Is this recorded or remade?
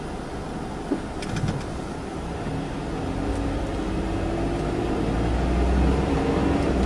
recorded